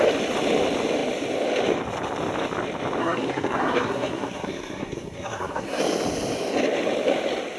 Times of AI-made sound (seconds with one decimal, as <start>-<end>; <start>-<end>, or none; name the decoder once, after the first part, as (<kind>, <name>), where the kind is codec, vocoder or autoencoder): 3.0-5.8 (codec, SNAC)